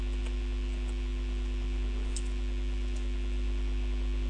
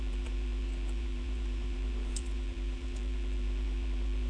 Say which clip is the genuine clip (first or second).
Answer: first